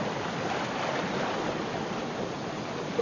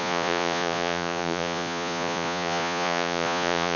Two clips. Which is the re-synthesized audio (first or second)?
second